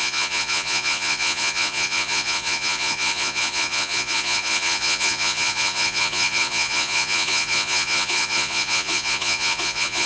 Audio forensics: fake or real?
fake